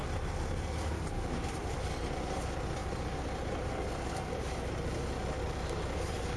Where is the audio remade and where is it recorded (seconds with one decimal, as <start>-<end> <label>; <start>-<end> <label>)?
0.0-6.4 recorded